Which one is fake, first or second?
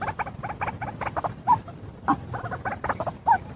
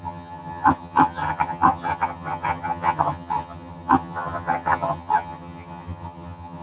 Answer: second